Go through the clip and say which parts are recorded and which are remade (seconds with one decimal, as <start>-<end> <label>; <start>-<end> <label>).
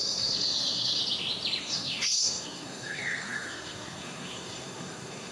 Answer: 0.0-1.0 remade; 1.0-1.6 recorded; 1.6-5.3 remade